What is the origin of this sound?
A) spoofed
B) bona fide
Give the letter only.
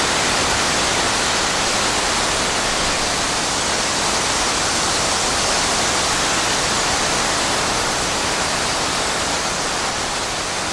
B